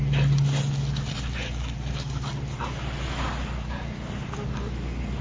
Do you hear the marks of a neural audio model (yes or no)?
no